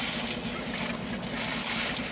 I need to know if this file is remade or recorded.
recorded